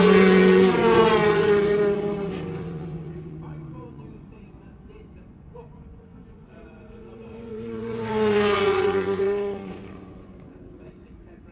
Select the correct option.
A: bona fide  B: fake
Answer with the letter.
B